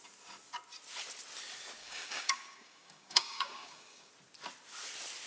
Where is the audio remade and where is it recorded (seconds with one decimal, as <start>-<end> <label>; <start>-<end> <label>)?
0.0-1.8 recorded; 1.8-4.1 remade; 4.1-5.3 recorded